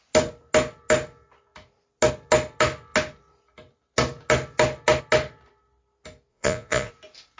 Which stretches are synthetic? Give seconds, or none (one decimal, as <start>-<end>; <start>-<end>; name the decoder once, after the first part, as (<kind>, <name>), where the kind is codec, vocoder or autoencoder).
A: 6.3-6.9 (vocoder, Vocos)